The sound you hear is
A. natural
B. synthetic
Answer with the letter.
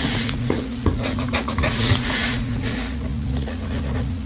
B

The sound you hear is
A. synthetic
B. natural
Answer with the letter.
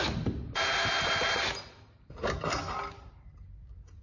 B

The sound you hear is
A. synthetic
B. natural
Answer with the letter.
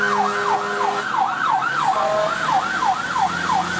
B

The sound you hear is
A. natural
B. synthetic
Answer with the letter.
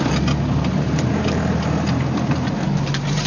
A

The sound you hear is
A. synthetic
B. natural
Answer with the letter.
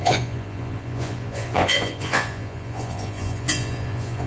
A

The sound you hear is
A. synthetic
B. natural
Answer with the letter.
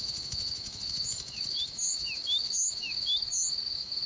A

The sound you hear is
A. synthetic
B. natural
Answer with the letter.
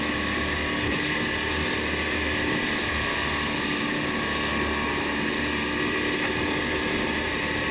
B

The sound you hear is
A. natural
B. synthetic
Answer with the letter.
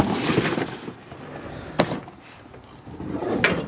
A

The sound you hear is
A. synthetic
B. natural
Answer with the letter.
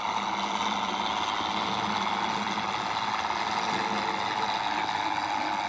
B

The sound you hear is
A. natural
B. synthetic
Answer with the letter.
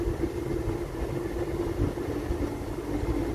A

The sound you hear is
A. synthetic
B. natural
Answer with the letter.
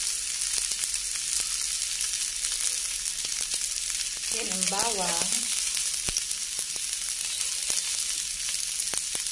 B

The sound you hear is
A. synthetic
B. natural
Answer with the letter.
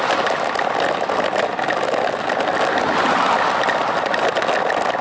B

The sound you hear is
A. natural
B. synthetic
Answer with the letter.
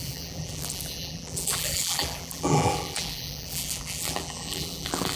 B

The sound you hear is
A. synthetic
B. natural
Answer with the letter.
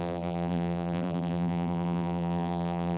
A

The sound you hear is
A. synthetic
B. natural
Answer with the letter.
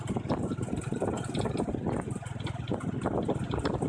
B